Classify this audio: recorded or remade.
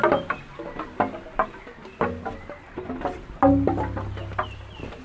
recorded